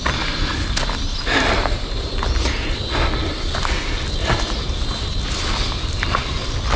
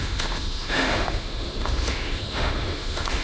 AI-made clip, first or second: second